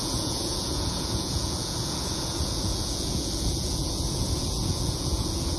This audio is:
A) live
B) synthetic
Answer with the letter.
B